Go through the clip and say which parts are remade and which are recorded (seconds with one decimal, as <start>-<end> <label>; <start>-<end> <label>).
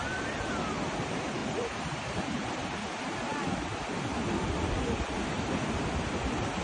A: 0.0-1.4 recorded; 1.4-2.8 remade; 2.8-6.6 recorded